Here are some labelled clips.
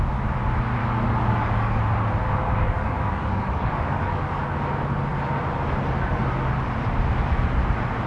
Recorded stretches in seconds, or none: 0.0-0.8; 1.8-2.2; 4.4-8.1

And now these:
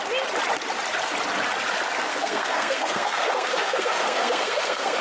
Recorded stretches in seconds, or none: 0.0-2.1

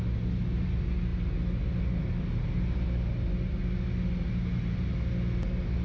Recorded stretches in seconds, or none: 0.0-5.8